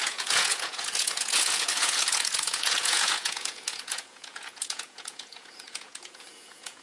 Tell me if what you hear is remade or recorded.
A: remade